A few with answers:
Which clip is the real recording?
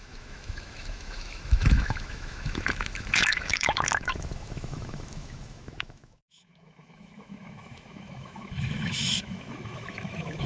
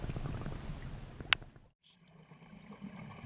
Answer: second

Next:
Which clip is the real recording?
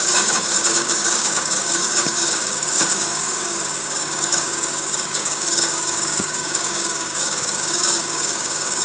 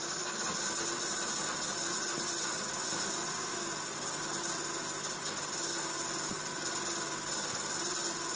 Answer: second